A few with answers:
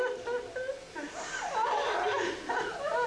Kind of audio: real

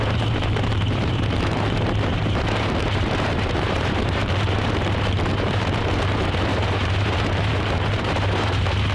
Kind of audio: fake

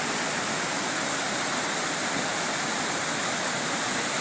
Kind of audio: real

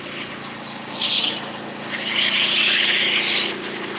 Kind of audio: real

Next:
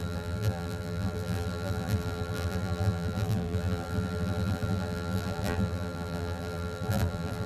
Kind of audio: fake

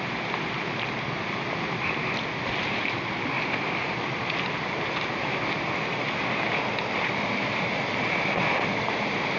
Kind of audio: real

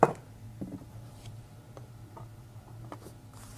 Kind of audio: fake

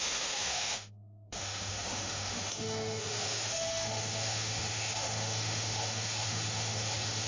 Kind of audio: fake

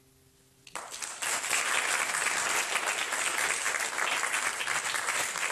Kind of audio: real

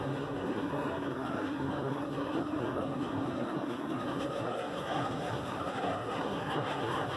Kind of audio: fake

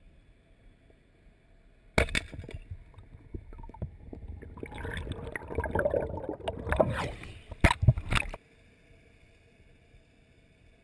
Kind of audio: real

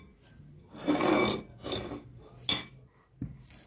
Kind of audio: real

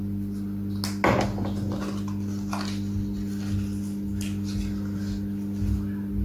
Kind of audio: real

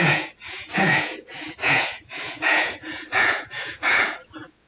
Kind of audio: fake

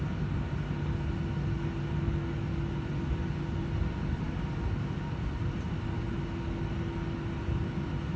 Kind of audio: real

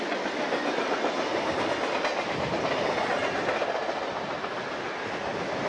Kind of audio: real